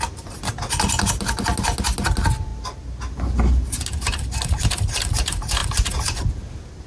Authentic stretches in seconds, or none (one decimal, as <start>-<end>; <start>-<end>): 0.0-6.9